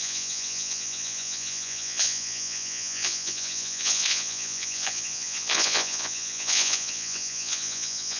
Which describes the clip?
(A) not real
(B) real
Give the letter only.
A